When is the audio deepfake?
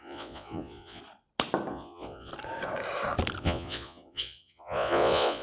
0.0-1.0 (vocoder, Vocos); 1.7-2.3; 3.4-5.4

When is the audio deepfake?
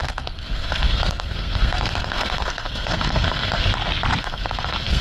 0.0-3.7 (codec, SNAC); 4.2-5.0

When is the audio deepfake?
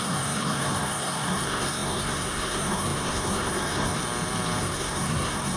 0.0-4.0 (codec, SNAC); 4.6-5.6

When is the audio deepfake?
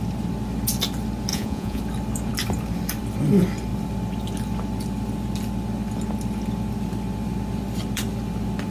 1.3-1.8 (vocoder, Vocos)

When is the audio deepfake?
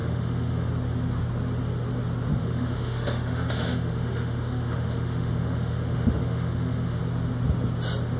0.0-0.7 (autoencoder, DAC-VAE); 2.3-7.0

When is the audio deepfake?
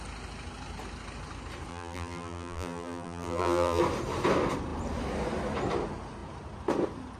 1.7-3.8 (vocoder, BigVGAN v2)